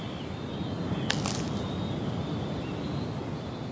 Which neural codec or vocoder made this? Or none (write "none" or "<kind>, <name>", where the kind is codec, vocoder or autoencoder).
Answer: vocoder, BigVGAN v2